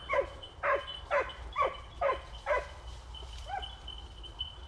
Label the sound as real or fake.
real